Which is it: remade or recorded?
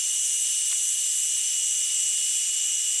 recorded